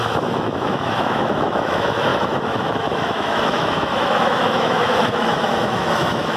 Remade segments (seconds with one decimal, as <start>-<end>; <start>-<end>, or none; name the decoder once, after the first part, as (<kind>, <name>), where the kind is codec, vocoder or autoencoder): 0.0-6.4 (autoencoder, DAC-VAE)